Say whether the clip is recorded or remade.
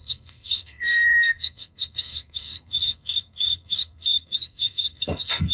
remade